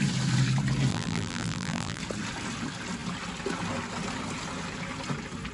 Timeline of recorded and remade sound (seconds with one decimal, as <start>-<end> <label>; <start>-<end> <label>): 0.0-0.9 recorded; 0.9-2.0 remade; 2.0-5.5 recorded